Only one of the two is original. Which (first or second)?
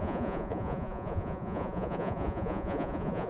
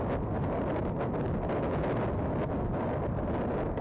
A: second